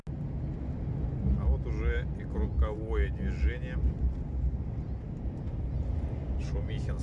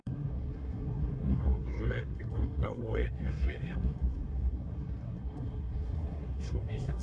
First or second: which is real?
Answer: first